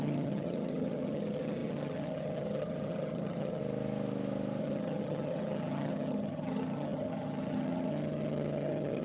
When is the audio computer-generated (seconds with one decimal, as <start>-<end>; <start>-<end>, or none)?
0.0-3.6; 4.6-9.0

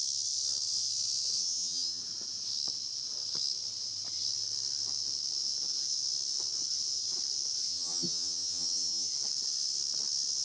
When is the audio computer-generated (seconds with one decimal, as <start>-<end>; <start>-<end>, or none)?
1.4-2.0; 7.7-9.1

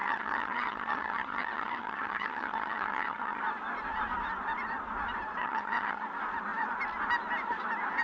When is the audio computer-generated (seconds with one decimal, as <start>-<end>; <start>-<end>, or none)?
0.0-3.4; 5.4-6.0